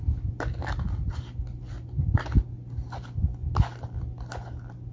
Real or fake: real